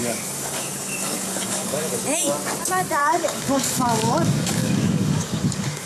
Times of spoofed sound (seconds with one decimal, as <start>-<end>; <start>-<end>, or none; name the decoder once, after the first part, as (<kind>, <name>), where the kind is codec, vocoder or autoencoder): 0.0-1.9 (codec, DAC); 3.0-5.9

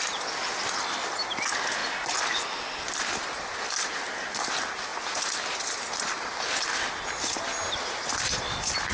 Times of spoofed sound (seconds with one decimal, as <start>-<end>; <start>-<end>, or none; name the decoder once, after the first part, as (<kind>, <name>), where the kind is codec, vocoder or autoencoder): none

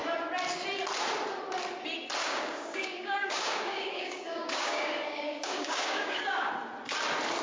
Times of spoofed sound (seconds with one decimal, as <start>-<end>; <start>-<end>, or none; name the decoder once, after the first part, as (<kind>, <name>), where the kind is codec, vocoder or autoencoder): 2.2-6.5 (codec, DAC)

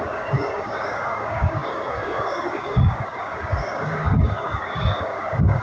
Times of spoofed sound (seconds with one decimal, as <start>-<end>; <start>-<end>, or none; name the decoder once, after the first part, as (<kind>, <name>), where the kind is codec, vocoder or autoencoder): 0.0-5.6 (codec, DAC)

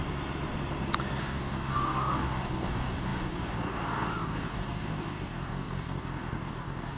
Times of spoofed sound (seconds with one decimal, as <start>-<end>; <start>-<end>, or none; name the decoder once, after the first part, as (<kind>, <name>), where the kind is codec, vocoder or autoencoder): 1.2-7.0 (codec, DAC)

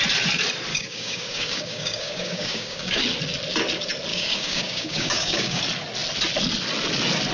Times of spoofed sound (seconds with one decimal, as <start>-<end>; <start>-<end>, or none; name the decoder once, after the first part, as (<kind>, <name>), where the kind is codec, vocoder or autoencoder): 0.7-3.0 (codec, DAC); 4.1-5.6

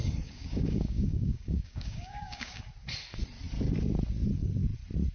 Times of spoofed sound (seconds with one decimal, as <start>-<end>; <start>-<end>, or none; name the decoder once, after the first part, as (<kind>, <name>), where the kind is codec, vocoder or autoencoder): 0.0-2.6 (codec, DAC)